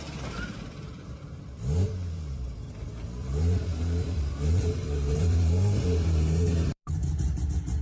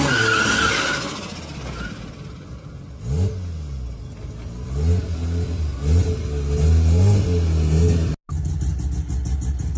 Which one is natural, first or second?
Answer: second